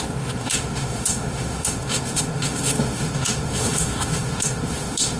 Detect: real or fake fake